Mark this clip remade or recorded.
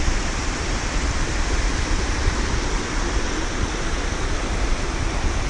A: recorded